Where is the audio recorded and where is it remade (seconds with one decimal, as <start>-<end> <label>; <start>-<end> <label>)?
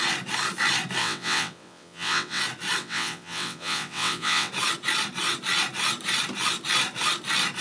0.0-1.0 recorded; 1.0-2.4 remade; 2.4-2.8 recorded; 2.8-4.5 remade; 4.5-7.6 recorded